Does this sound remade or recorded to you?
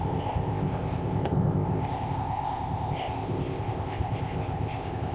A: remade